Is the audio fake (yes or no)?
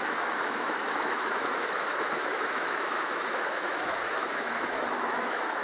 yes